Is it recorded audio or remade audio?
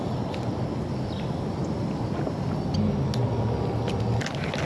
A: recorded